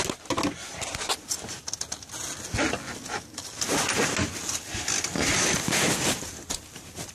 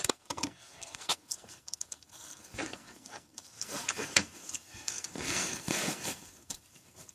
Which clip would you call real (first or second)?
first